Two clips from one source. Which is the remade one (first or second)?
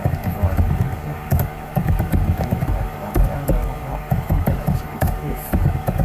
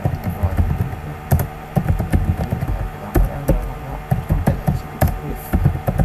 first